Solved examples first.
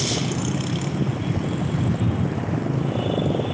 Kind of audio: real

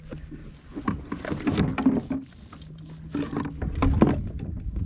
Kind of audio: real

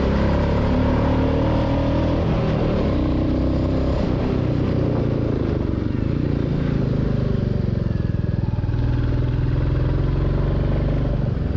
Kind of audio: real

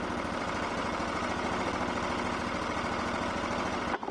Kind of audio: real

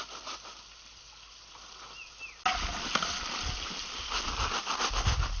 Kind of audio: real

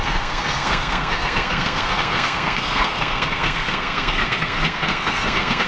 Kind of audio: fake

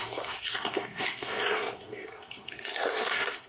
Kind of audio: fake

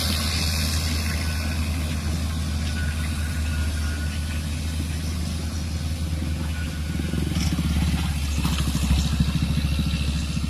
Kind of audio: real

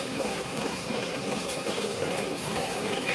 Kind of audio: fake